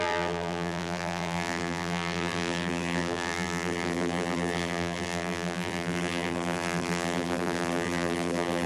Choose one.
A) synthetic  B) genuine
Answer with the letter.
A